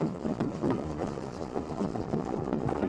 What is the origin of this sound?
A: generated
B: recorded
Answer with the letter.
A